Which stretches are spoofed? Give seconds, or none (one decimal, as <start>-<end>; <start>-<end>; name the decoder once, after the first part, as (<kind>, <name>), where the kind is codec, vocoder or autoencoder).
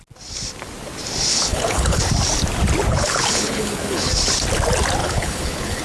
1.3-2.0 (codec, HILCodec); 2.9-4.1; 5.0-5.8